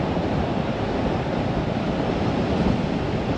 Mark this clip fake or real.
real